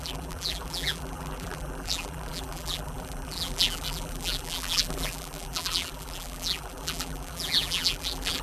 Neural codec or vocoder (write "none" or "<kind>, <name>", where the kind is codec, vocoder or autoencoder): vocoder, BigVGAN v2